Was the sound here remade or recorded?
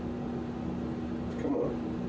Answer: recorded